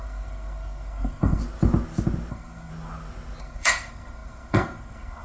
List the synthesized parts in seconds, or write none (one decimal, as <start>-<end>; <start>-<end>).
0.0-1.4; 2.3-2.7; 3.4-5.2